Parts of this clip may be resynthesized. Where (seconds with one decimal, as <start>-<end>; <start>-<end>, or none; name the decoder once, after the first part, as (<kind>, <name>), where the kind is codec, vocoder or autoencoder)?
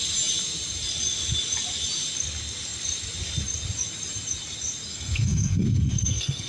4.9-6.5 (codec, SNAC)